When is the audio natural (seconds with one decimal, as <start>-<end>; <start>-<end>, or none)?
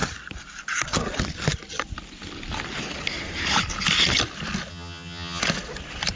0.0-4.7; 5.4-6.2